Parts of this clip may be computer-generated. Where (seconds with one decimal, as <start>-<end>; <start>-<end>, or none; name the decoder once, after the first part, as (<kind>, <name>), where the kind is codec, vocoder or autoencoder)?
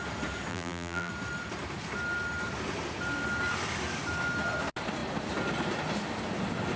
0.5-1.1 (vocoder, BigVGAN v2)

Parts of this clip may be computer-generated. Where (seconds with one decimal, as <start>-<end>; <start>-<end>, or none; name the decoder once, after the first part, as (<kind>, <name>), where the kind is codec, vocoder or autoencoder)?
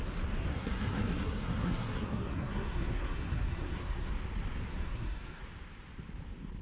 0.5-4.1 (codec, SNAC); 4.7-5.4